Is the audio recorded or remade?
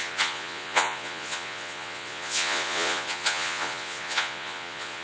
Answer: remade